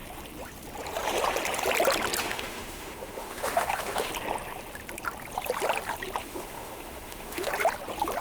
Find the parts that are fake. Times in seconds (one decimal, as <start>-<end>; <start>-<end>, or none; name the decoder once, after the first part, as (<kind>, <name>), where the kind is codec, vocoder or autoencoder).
2.2-4.1 (autoencoder, DAC-VAE); 6.2-7.5